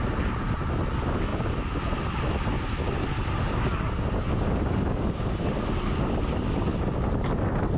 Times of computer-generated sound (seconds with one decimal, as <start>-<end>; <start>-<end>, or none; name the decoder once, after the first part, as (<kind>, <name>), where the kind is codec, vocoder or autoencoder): none